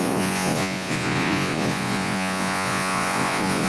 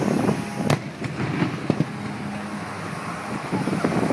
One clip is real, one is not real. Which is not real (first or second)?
first